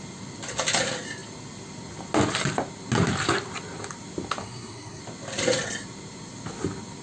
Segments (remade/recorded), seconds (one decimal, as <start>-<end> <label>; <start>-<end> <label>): 0.0-4.4 recorded; 4.4-5.0 remade; 5.0-7.0 recorded